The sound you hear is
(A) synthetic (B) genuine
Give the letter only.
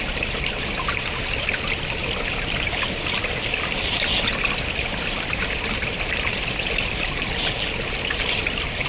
B